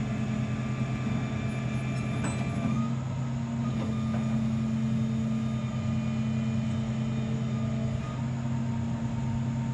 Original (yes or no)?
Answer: yes